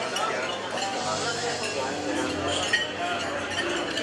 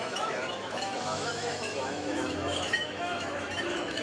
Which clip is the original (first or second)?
first